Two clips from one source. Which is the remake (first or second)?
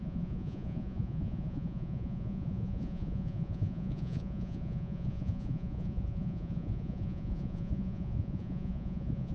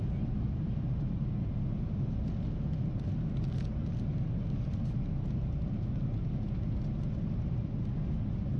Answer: first